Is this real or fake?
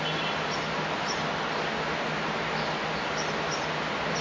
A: real